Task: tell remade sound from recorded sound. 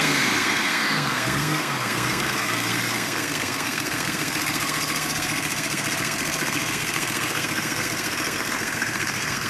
remade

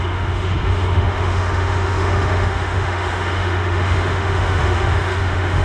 remade